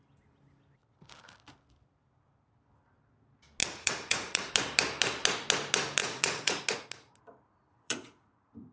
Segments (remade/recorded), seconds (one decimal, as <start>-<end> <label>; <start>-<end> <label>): 0.0-3.6 recorded; 3.6-4.5 remade; 4.5-6.0 recorded; 6.0-6.6 remade; 6.6-7.7 recorded; 7.7-8.7 remade